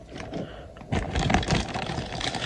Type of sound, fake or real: real